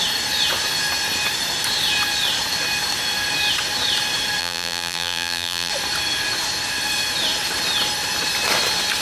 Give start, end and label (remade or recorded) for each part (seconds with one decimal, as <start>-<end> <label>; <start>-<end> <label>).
0.0-4.4 recorded; 4.4-5.7 remade; 5.7-9.0 recorded